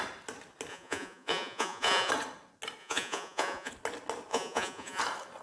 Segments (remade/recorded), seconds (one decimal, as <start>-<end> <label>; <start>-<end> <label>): 0.0-0.7 recorded; 0.7-2.1 remade; 2.1-2.8 recorded; 2.8-3.7 remade; 3.7-4.3 recorded; 4.3-5.0 remade; 5.0-5.4 recorded